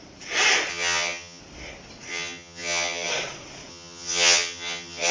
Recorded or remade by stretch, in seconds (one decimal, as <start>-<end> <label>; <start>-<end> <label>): 0.0-0.7 recorded; 0.7-1.4 remade; 1.4-2.1 recorded; 2.1-3.1 remade; 3.1-3.7 recorded; 3.7-5.1 remade